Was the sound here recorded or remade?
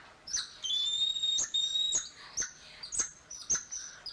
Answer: recorded